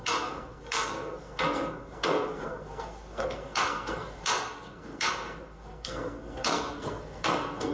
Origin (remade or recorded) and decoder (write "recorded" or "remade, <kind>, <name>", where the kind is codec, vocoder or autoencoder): remade, codec, SNAC